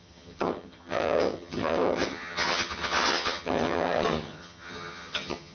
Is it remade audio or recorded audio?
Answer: remade